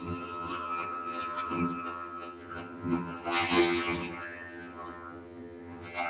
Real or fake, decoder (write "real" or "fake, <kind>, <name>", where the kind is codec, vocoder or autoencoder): fake, vocoder, HiFi-GAN